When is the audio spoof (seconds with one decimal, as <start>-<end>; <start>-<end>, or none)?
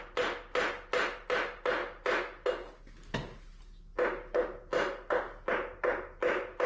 none